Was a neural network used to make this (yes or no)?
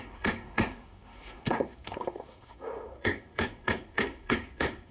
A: yes